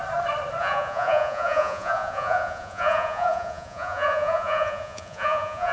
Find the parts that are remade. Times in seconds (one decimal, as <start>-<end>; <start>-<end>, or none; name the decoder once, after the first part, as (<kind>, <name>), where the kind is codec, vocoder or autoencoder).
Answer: 0.6-5.7 (vocoder, Vocos)